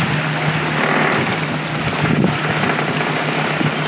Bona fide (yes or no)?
yes